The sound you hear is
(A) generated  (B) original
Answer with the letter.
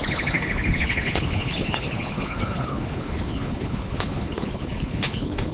A